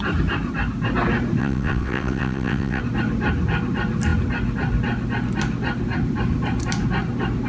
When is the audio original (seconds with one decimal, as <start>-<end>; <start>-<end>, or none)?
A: 0.0-1.4; 2.8-7.5